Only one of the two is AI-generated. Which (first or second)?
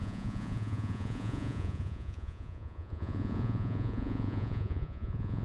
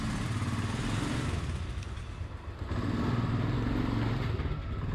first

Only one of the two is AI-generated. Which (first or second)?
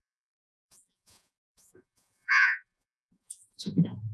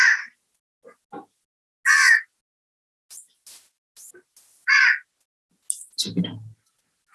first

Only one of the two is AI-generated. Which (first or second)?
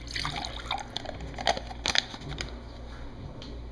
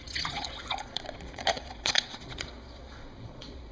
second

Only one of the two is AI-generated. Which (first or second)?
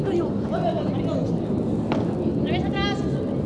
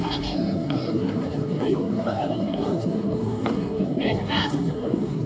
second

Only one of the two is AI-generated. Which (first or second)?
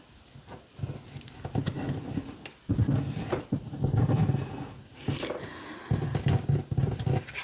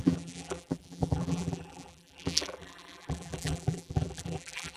second